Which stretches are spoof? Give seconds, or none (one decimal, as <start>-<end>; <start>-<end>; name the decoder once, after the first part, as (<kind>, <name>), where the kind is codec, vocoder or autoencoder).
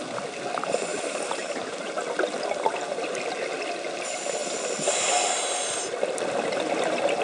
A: 0.9-1.9 (vocoder, BigVGAN v2)